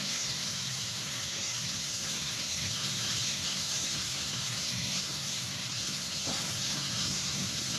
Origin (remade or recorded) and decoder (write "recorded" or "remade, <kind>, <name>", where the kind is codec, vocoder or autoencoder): remade, codec, SNAC